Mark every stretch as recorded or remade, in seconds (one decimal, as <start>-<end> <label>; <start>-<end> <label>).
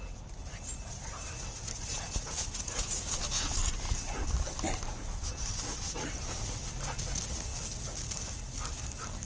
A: 0.0-1.9 recorded; 1.9-3.2 remade; 3.2-9.3 recorded